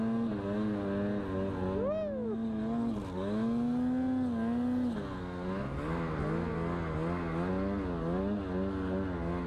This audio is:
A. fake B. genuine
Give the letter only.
B